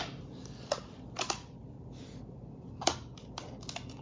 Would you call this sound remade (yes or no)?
no